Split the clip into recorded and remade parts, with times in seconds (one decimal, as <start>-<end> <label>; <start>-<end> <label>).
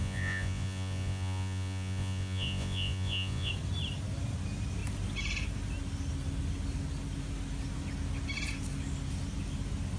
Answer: 0.0-3.5 remade; 3.5-10.0 recorded